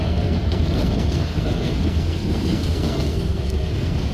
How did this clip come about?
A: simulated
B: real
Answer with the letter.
A